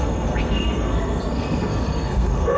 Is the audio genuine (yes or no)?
no